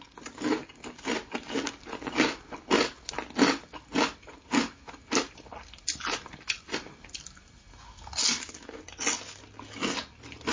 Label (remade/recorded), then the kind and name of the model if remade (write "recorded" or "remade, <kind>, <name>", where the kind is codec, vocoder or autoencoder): recorded